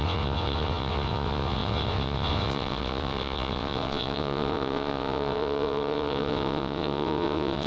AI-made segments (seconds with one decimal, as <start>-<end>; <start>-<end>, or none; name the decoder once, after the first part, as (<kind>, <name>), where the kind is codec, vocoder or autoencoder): 0.0-7.7 (vocoder, WaveNeXt)

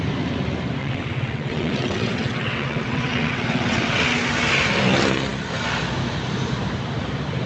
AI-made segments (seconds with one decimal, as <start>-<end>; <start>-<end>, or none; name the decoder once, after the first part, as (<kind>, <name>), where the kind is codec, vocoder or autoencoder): 0.8-4.0 (vocoder, WaveNeXt)

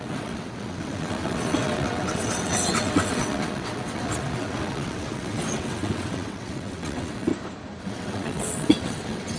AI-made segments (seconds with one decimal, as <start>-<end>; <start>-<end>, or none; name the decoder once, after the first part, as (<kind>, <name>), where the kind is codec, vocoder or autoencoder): 0.0-7.3 (vocoder, WaveNeXt); 7.8-9.4

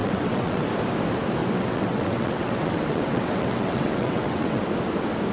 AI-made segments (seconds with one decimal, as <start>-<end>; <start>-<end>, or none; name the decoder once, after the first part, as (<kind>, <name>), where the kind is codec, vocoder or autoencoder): 0.0-0.7 (vocoder, WaveNeXt); 1.4-4.6